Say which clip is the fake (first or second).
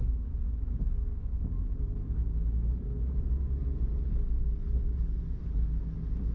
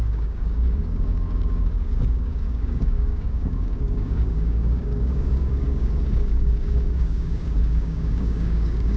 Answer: second